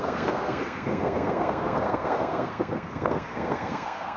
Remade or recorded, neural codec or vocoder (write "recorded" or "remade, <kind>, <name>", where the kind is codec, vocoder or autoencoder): remade, codec, SNAC